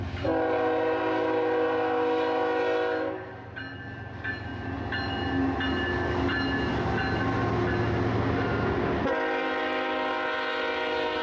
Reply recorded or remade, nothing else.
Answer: recorded